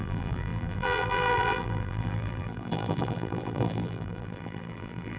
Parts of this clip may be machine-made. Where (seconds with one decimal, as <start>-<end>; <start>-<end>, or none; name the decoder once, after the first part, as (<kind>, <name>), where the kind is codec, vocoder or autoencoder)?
0.0-5.2 (vocoder, BigVGAN v2)